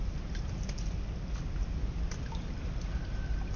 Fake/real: real